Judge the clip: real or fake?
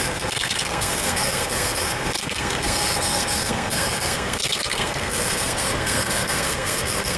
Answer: fake